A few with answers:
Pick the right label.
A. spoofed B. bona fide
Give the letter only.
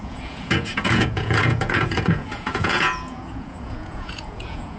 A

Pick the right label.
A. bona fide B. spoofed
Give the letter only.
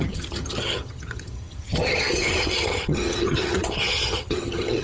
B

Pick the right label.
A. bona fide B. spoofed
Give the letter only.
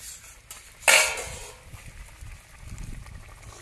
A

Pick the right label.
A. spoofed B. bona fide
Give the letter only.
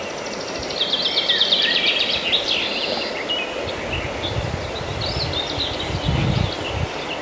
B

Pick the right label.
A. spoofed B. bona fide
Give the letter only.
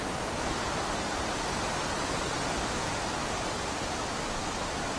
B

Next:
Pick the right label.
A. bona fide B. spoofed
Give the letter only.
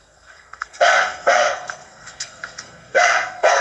B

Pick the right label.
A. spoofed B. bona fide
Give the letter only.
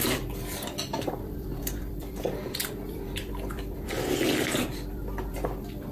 A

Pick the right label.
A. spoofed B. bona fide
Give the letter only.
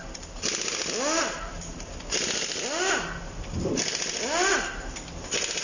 B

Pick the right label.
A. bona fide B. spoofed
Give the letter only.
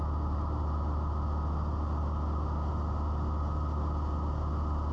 A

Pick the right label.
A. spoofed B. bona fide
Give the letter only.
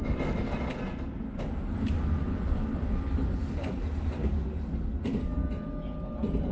B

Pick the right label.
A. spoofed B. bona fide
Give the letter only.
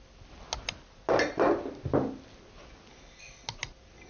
B